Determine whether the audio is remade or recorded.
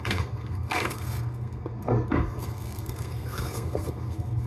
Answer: remade